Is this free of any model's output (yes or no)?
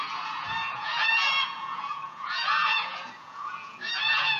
no